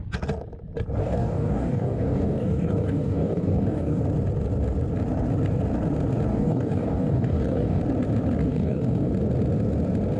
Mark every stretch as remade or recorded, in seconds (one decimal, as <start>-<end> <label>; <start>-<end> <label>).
0.0-1.0 recorded; 1.0-4.0 remade; 4.0-6.3 recorded; 6.3-7.8 remade; 7.8-8.5 recorded; 8.5-9.1 remade; 9.1-10.2 recorded